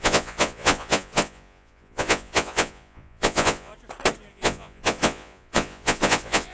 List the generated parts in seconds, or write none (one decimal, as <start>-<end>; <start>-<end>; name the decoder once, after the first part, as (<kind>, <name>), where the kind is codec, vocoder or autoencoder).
0.0-3.7 (vocoder, Vocos); 4.3-6.5